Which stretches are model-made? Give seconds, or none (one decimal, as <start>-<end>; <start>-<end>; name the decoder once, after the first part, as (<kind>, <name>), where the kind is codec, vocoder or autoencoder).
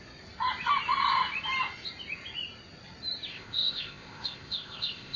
3.3-5.2 (codec, ZipCodec)